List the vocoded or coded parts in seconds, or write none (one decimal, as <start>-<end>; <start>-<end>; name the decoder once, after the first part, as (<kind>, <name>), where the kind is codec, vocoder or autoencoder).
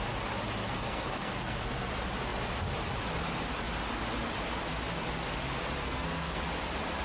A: 0.6-1.9 (codec, SNAC); 5.8-6.4